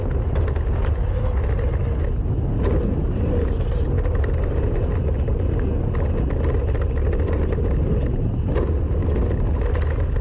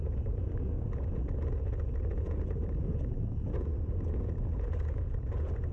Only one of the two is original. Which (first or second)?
first